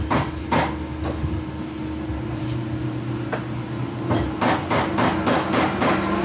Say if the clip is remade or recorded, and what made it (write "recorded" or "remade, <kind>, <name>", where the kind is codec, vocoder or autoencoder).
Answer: recorded